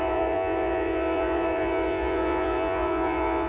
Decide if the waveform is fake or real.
fake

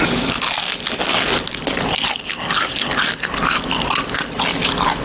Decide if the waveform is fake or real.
real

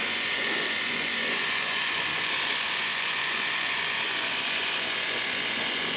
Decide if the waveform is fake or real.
fake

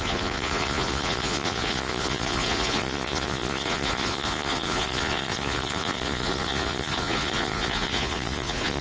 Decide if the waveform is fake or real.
fake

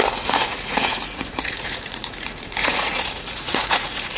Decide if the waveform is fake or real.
fake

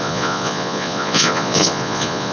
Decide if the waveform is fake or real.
fake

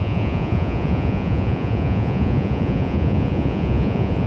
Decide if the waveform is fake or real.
fake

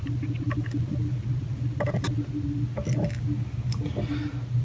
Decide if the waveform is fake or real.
real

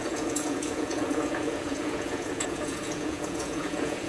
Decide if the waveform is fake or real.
fake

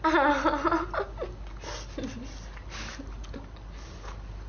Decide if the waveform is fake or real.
real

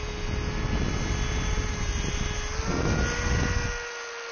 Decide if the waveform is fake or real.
real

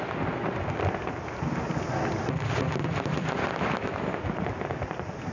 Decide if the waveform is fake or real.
real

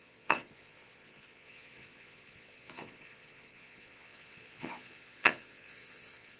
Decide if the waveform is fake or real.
fake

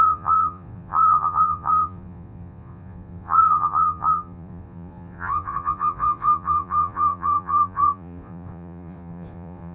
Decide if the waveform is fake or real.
fake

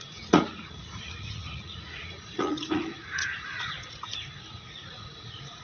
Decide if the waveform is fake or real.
fake